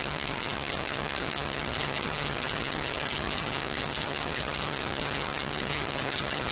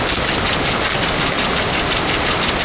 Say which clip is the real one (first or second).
second